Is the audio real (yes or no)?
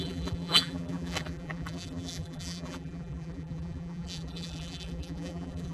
no